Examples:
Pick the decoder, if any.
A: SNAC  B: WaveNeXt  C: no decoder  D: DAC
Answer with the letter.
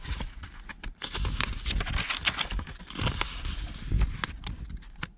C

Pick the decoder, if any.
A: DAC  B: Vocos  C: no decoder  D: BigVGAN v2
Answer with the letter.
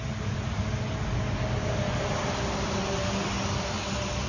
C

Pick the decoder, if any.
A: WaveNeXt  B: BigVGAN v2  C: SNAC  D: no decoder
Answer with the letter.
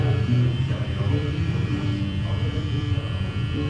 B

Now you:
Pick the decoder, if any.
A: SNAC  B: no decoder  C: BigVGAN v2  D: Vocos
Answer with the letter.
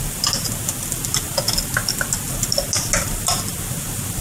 B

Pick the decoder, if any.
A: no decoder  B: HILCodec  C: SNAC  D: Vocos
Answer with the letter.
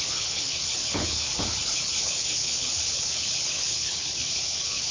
B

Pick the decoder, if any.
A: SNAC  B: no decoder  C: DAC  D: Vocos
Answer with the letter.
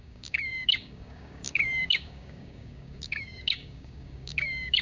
C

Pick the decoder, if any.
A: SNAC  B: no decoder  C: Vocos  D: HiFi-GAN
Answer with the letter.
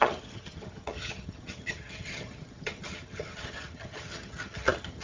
D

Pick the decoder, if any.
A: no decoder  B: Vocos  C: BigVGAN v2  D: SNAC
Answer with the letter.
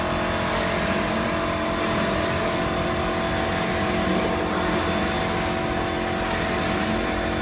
A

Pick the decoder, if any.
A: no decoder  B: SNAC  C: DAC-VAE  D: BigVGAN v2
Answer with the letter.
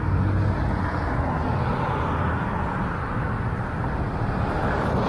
A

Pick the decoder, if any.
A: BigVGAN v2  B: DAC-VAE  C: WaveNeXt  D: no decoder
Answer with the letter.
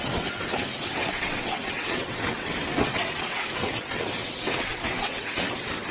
C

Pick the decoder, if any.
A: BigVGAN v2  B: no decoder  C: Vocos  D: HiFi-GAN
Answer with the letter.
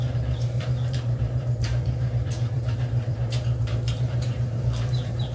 A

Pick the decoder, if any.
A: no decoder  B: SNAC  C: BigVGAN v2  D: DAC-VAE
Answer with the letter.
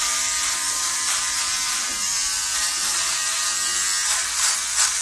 A